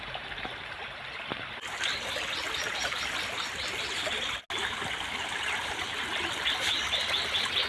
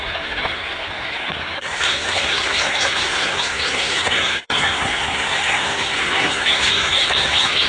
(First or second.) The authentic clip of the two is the first